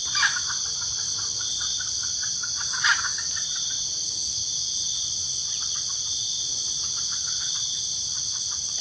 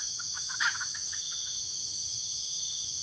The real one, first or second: first